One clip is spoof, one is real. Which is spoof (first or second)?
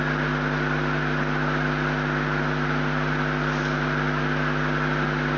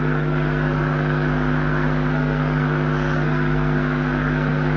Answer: second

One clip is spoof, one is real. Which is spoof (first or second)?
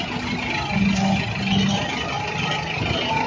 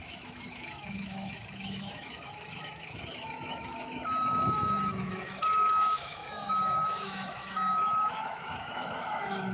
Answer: second